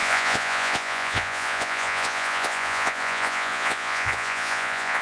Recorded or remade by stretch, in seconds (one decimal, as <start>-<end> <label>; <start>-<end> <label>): 0.0-5.0 remade